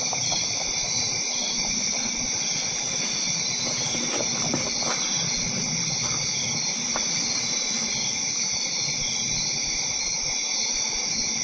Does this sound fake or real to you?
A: fake